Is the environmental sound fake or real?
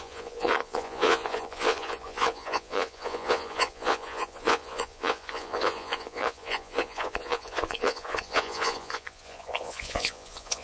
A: fake